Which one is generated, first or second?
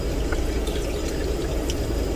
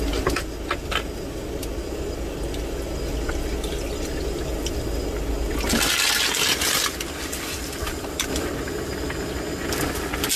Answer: first